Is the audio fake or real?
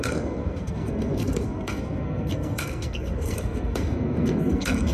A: fake